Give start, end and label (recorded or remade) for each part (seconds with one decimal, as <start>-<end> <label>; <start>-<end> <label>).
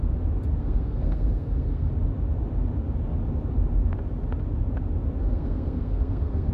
0.0-0.6 recorded; 0.6-1.9 remade; 1.9-5.2 recorded; 5.2-6.5 remade